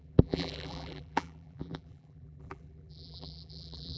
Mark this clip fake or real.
fake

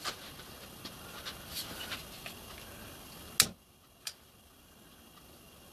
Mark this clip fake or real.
real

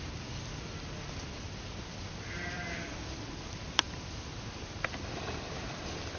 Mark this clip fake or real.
fake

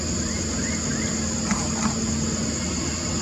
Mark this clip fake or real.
real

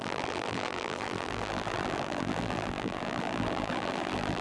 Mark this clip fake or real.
fake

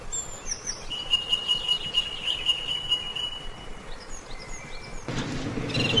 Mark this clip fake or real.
real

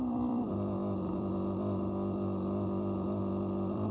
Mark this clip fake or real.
fake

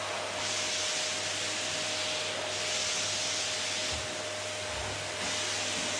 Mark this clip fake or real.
real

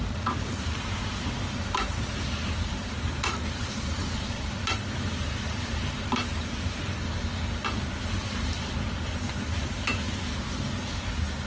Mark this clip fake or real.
fake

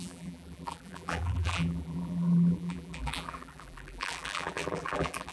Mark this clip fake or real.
fake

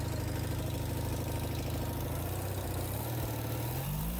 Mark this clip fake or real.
real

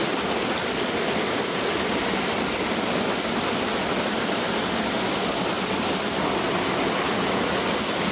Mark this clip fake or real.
real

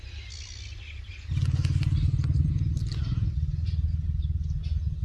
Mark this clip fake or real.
real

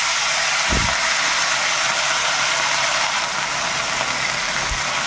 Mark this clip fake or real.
real